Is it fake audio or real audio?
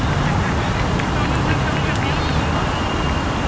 real